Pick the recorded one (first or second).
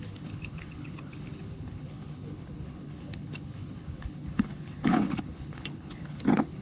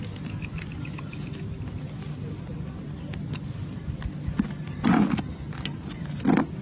second